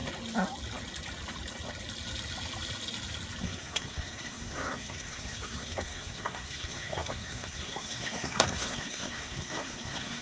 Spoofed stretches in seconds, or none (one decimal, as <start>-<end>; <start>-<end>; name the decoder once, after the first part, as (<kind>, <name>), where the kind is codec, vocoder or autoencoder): 3.4-10.2 (codec, SNAC)